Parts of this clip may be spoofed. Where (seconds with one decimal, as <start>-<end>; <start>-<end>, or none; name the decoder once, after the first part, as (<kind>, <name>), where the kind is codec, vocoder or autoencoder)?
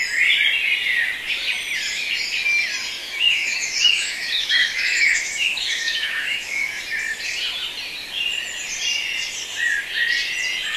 3.0-6.8 (autoencoder, DAC-VAE)